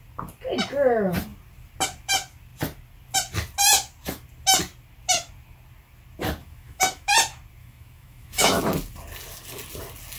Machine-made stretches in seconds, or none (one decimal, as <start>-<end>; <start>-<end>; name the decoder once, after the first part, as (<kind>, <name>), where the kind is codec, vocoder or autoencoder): 6.4-7.1 (autoencoder, DAC-VAE); 7.6-8.6

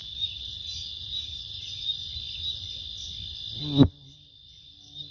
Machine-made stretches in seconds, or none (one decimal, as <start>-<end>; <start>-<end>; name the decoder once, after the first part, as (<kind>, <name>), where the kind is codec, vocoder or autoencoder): none

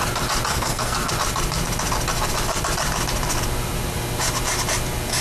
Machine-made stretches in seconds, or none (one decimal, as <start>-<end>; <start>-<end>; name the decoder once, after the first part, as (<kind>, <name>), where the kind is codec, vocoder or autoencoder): 0.5-1.1 (codec, SNAC)

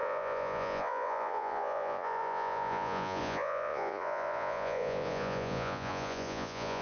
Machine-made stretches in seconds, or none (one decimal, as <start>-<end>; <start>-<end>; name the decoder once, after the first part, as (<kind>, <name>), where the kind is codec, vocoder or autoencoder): 0.0-6.8 (vocoder, Vocos)

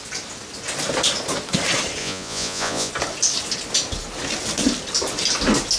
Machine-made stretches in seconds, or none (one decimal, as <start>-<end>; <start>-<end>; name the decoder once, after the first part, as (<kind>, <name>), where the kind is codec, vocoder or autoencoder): 2.0-2.9 (vocoder, Vocos)

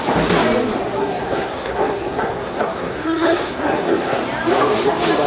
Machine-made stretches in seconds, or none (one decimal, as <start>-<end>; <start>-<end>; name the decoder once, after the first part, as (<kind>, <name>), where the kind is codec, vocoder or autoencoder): 1.0-4.2 (codec, SNAC)

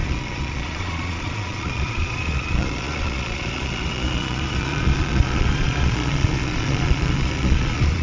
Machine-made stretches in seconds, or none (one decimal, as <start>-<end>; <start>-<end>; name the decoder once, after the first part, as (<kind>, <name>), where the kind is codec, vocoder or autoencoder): 0.0-8.0 (vocoder, Vocos)